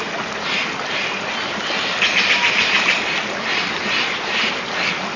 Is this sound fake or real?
real